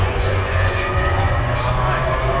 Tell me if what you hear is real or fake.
fake